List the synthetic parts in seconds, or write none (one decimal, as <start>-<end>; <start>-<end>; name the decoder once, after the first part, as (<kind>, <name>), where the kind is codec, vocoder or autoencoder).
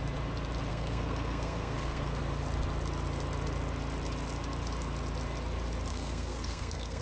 0.7-2.2 (codec, SNAC); 5.9-7.0